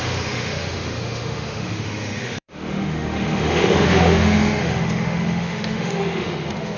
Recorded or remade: remade